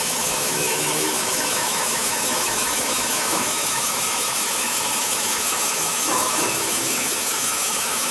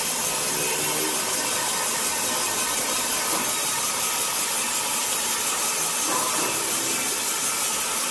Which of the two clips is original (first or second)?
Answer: second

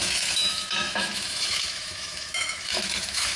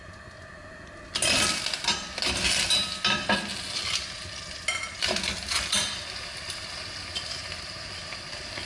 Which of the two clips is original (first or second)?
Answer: second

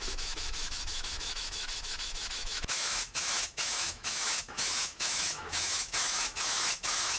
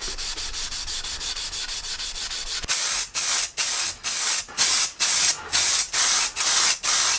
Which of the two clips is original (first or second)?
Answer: second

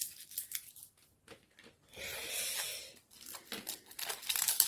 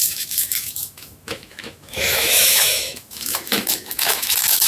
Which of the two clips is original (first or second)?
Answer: first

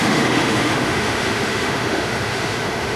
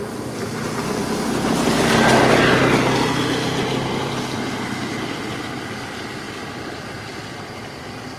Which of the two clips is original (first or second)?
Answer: second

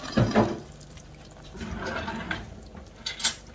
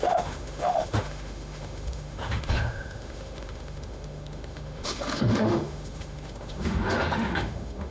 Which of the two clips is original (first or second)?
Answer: first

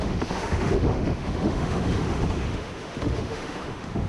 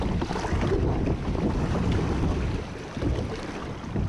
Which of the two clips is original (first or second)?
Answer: second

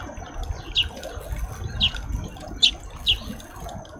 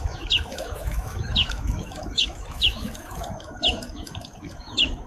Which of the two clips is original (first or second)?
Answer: first